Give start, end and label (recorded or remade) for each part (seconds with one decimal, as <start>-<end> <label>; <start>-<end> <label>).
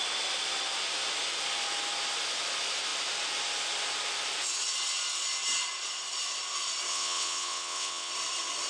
0.0-6.9 recorded; 6.9-8.1 remade; 8.1-8.7 recorded